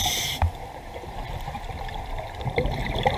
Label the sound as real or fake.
fake